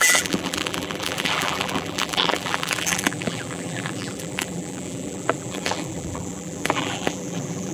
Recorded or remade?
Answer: remade